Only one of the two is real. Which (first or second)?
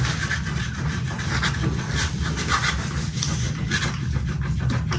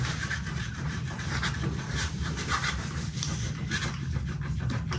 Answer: first